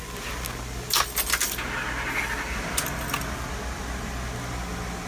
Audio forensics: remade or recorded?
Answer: recorded